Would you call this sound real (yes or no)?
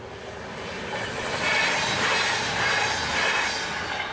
yes